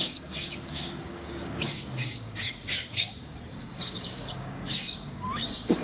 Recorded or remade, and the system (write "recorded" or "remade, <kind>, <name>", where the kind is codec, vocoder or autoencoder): remade, codec, DAC